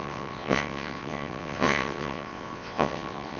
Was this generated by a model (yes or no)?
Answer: yes